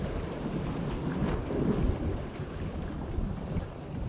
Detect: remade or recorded recorded